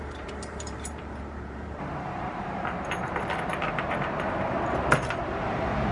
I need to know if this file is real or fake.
fake